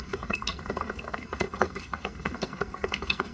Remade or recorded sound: remade